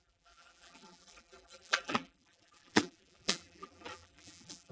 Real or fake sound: fake